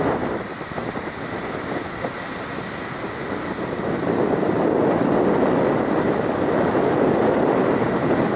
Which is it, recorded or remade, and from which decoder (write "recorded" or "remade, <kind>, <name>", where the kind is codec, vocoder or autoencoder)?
recorded